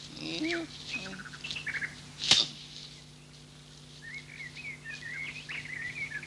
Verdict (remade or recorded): recorded